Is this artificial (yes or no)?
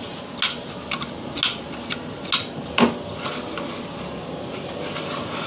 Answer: no